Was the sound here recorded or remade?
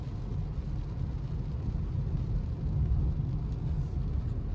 recorded